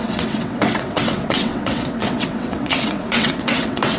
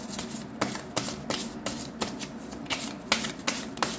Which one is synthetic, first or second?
first